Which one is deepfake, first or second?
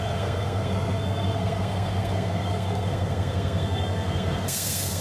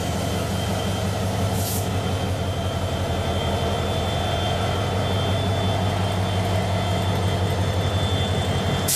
first